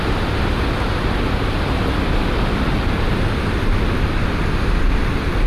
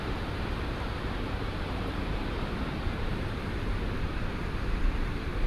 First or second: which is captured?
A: first